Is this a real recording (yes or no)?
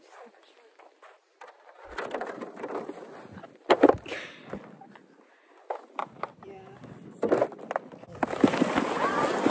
yes